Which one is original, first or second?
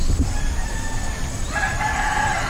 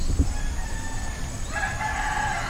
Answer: second